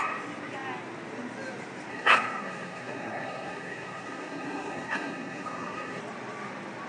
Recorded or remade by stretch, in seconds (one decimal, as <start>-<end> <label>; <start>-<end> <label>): 0.0-1.9 recorded; 1.9-6.0 remade; 6.0-6.9 recorded